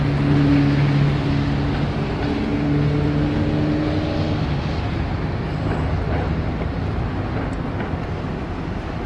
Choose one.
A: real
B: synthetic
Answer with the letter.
A